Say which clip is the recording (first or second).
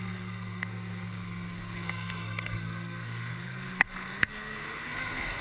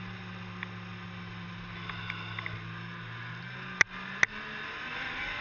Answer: second